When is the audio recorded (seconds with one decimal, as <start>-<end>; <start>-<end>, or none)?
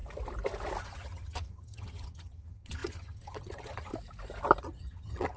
0.0-0.8; 3.9-4.6